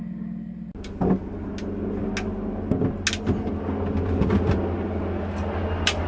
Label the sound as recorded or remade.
recorded